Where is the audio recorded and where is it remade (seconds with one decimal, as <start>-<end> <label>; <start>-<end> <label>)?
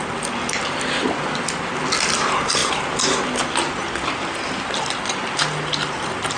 0.0-6.4 recorded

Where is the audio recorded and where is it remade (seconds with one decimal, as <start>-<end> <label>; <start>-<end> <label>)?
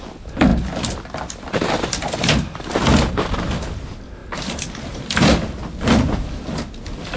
0.0-7.2 recorded